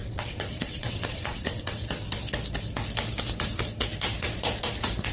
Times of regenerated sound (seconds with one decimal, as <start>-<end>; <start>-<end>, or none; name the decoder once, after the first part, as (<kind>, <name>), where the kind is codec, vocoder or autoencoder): 0.0-1.8 (vocoder, WaveNeXt)